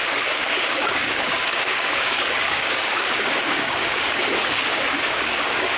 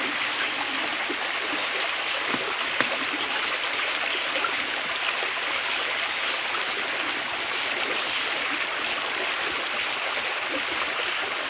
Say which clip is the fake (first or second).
first